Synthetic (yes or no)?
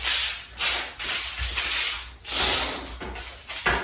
no